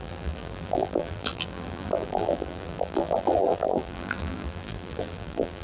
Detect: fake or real fake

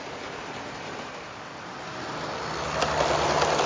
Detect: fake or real real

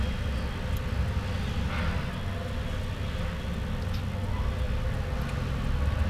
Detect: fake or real real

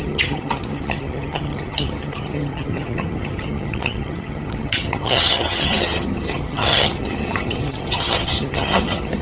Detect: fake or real fake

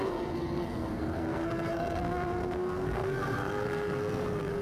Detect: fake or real fake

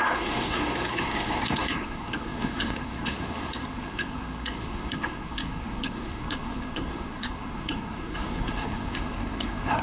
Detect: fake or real fake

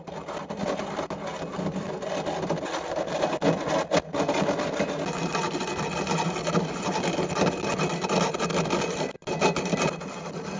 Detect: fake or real real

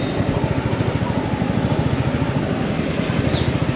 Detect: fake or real real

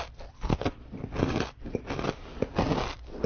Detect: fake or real real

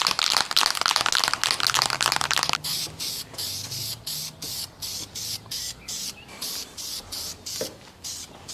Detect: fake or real real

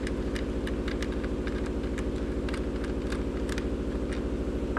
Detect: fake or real real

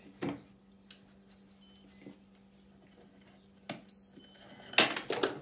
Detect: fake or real real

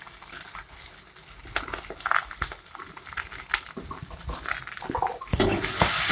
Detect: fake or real real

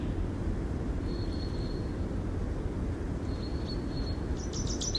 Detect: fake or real real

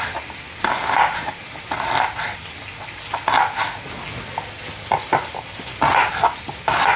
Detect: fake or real real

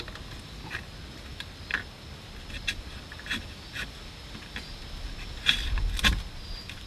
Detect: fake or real real